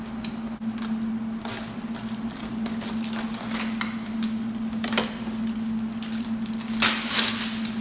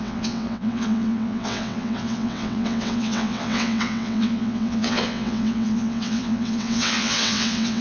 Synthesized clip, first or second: second